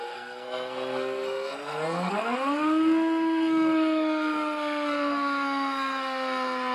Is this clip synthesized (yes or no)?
yes